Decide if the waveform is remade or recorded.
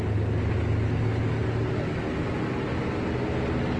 recorded